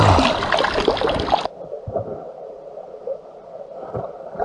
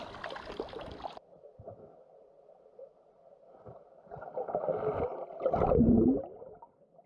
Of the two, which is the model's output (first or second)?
first